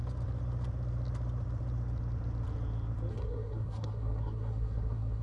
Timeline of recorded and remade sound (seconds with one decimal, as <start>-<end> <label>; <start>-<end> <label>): 0.0-3.1 recorded; 3.1-5.2 remade